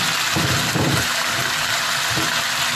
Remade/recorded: recorded